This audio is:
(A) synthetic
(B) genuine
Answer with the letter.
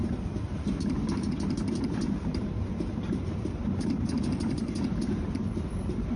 A